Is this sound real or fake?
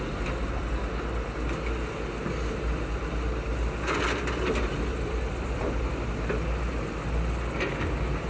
real